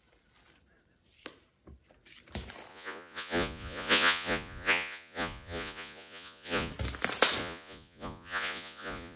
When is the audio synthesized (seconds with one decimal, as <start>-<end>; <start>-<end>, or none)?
2.7-6.7; 7.4-9.2